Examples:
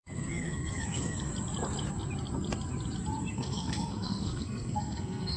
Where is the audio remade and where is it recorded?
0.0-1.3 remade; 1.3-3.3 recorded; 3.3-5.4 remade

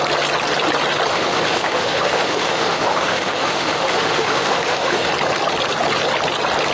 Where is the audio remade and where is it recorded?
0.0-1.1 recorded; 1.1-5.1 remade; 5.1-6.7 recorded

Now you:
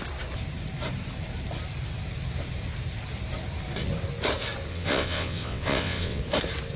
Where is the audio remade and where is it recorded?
0.0-4.7 recorded; 4.7-6.2 remade; 6.2-6.8 recorded